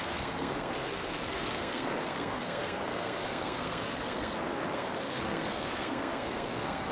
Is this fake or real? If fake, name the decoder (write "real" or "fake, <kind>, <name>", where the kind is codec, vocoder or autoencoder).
fake, codec, SNAC